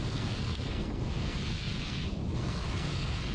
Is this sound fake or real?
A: fake